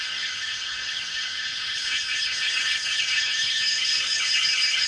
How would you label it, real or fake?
fake